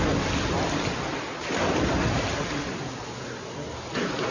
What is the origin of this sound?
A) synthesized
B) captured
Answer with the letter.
B